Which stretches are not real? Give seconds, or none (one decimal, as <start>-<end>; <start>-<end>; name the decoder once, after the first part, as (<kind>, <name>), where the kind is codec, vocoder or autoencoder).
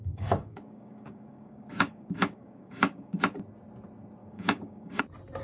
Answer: 0.0-3.2 (codec, DAC); 4.2-5.0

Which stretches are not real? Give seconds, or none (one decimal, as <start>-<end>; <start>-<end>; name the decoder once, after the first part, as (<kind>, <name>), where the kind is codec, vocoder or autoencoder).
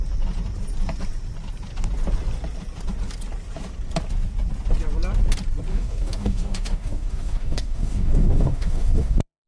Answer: 5.7-9.5 (codec, DAC)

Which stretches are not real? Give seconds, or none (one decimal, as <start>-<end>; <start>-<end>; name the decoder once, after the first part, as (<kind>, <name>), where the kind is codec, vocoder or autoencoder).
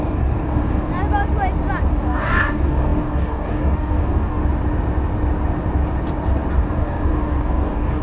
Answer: 0.0-0.9 (codec, DAC); 1.9-4.4; 6.6-8.0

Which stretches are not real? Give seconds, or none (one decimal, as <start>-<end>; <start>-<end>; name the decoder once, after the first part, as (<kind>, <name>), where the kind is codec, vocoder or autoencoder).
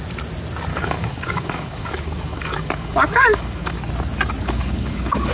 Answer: 0.7-3.9 (codec, DAC); 4.4-5.3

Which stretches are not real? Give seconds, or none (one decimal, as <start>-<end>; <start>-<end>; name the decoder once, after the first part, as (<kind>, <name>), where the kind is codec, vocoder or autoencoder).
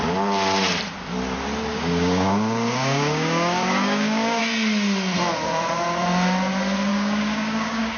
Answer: 1.7-4.4 (codec, DAC); 6.9-8.0